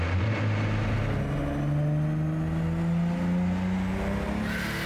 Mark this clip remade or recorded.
recorded